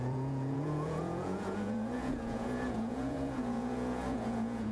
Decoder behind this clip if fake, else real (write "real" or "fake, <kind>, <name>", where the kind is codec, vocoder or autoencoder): fake, vocoder, Vocos